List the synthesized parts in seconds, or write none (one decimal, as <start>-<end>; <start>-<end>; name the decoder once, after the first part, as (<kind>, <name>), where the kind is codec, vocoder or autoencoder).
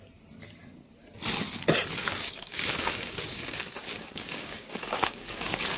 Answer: 2.0-5.8 (codec, DAC)